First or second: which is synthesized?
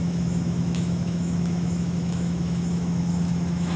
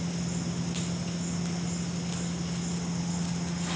first